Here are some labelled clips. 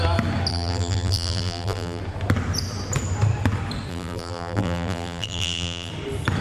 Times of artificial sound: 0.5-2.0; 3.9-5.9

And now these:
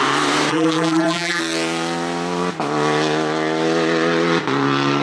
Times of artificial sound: 0.5-1.4

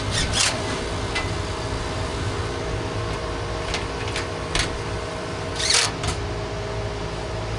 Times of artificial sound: 0.4-1.1

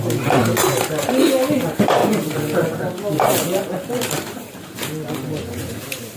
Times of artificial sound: 0.0-0.4; 1.0-6.2

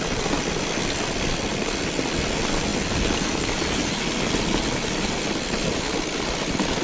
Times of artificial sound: 1.5-2.0; 2.7-3.5

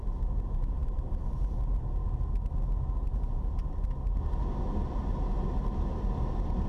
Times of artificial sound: none